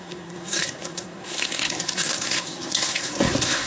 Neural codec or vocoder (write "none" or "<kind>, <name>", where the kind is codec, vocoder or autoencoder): codec, SNAC